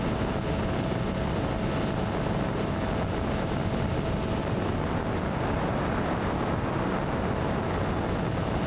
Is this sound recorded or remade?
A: recorded